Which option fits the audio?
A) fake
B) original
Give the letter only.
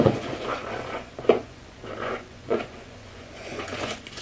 A